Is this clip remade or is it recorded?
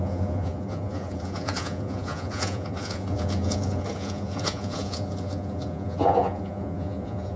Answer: remade